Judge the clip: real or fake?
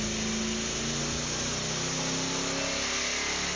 real